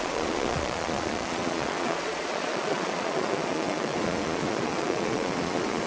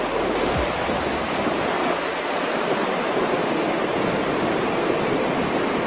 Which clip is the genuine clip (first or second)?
second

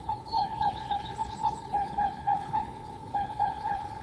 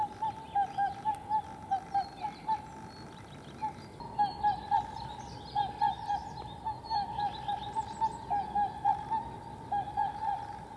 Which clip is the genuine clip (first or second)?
second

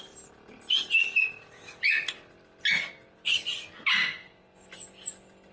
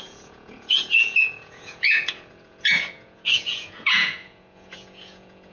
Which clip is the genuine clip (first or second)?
first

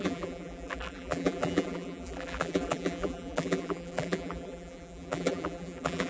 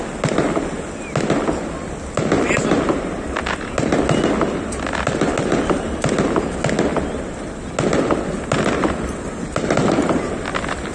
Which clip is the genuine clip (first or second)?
second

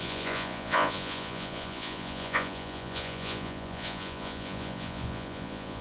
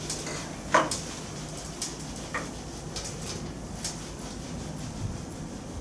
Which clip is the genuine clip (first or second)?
second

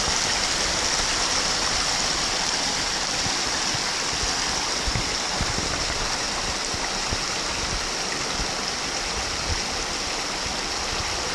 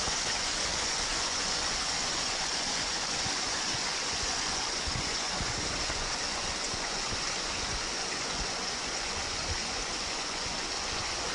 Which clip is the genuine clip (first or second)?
first